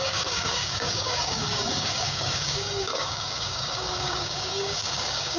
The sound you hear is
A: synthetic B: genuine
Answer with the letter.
A